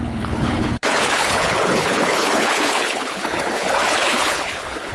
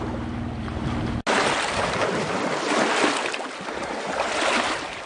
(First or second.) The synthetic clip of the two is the first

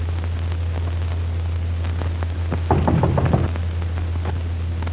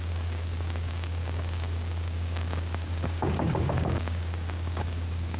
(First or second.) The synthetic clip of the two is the second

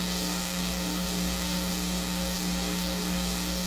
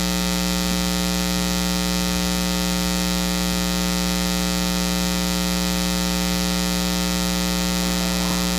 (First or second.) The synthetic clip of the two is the first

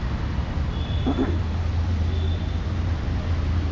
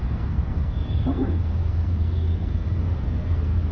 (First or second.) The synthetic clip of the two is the second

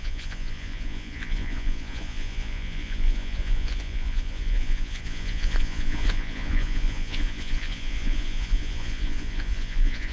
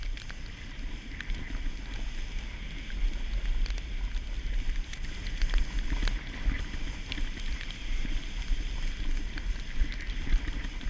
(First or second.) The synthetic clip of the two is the first